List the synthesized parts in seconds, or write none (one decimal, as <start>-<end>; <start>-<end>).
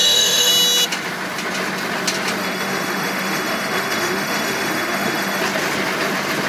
0.0-0.5; 2.4-5.4